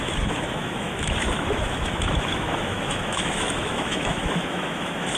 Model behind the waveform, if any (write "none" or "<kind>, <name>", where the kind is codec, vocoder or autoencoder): autoencoder, DAC-VAE